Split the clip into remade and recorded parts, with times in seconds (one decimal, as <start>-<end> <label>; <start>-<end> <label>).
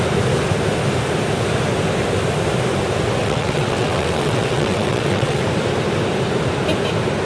0.0-3.2 recorded; 3.2-5.4 remade; 5.4-7.3 recorded